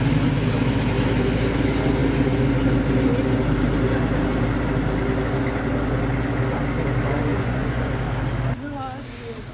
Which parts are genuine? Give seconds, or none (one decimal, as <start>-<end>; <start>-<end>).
0.0-7.3; 7.9-9.5

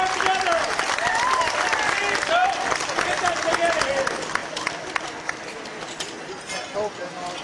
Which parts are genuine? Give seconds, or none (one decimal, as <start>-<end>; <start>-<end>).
0.0-2.4; 3.9-4.4; 6.2-7.4

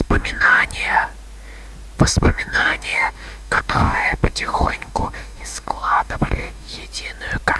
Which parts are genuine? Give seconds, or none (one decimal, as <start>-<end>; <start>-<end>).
0.6-2.2; 6.8-7.6

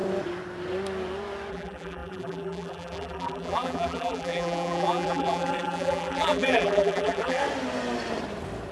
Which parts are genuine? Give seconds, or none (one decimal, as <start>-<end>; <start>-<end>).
0.0-1.5; 7.4-8.7

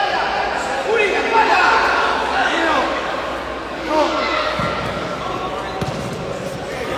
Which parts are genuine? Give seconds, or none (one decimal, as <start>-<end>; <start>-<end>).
0.0-2.1; 5.2-7.0